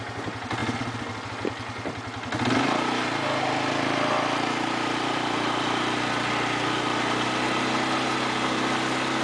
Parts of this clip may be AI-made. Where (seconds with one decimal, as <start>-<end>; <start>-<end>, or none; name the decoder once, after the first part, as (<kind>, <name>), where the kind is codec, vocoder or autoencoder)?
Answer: none